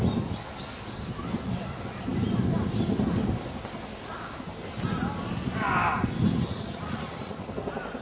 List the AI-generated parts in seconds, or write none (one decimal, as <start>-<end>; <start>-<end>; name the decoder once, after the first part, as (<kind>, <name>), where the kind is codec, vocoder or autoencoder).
6.5-7.5 (vocoder, Vocos)